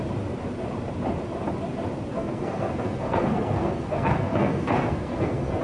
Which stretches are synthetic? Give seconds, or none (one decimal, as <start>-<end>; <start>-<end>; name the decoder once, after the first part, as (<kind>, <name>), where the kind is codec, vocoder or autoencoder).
2.1-5.6 (codec, SNAC)